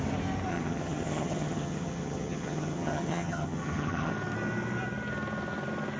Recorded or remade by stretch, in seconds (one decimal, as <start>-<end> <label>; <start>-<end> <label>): 0.0-0.5 recorded; 0.5-4.1 remade; 4.1-6.0 recorded